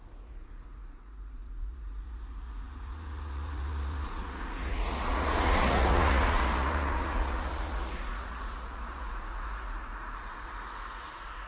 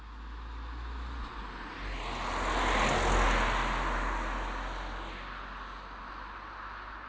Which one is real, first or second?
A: second